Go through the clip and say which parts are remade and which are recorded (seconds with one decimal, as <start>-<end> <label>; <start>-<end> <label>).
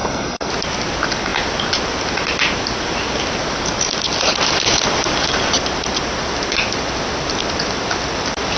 0.0-0.5 remade; 0.5-8.6 recorded